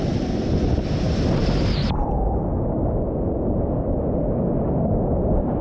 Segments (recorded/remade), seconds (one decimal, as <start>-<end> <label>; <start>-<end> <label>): 0.0-5.6 recorded